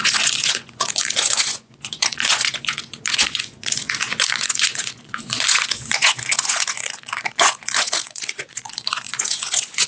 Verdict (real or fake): fake